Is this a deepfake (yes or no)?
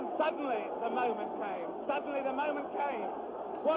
no